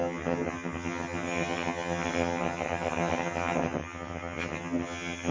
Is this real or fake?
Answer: fake